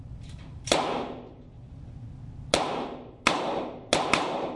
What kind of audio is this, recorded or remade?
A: recorded